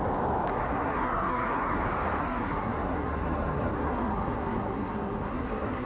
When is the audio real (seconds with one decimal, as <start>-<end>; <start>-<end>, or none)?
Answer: 0.0-0.5; 1.8-2.2